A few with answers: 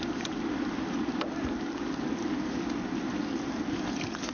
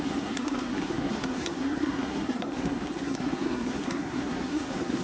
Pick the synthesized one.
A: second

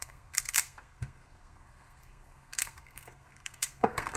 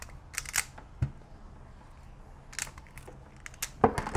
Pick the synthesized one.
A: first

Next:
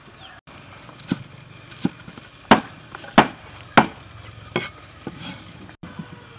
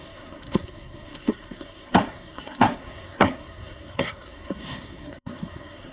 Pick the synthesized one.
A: second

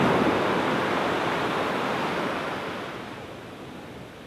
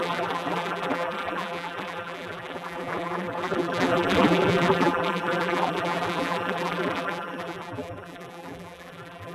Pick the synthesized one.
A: second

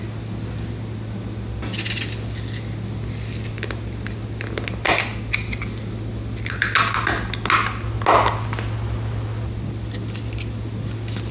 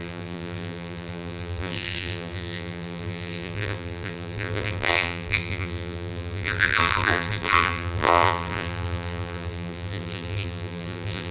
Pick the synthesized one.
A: second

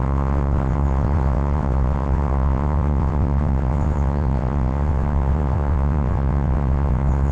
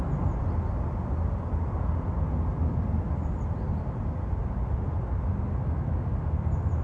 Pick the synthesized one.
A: first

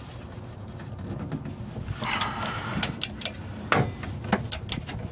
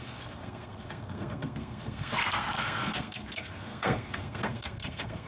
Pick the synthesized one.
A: second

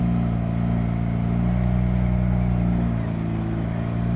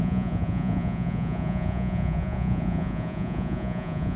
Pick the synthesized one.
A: second